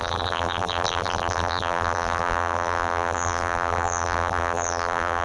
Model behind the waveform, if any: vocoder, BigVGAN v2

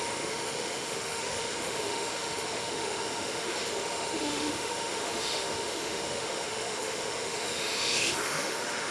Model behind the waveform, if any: autoencoder, DAC-VAE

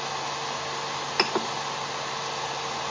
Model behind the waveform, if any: none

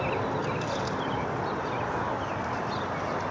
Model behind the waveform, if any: none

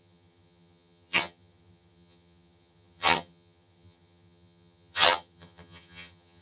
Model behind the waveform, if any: vocoder, HiFi-GAN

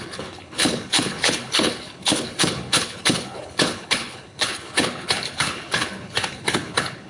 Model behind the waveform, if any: codec, HILCodec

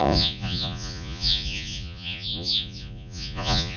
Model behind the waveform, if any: vocoder, Vocos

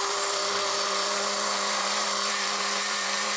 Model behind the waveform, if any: vocoder, BigVGAN v2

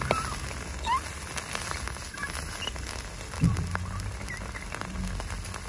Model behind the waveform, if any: none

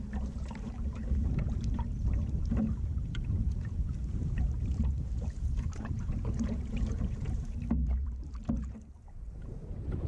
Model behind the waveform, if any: vocoder, BigVGAN v2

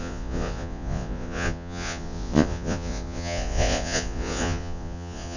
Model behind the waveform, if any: vocoder, Vocos